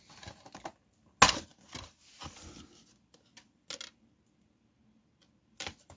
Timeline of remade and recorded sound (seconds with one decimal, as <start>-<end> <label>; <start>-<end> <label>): 0.0-6.0 recorded